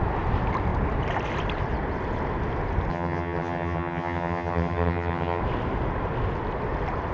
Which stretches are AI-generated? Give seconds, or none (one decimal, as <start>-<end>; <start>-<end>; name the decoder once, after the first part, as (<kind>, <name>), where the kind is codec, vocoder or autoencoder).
2.9-5.4 (vocoder, HiFi-GAN)